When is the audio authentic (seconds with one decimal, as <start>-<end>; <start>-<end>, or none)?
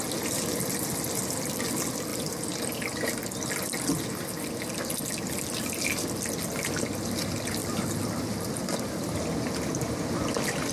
0.0-2.1; 3.2-7.6; 9.1-10.7